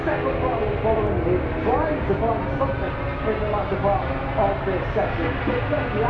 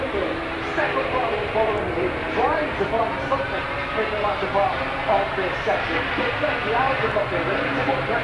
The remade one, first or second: second